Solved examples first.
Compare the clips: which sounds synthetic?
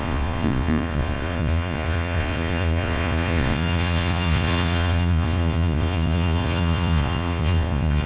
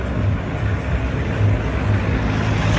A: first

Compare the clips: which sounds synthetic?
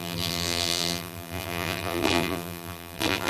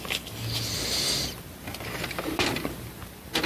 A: first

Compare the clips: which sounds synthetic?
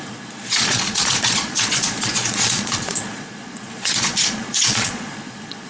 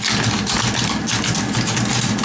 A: first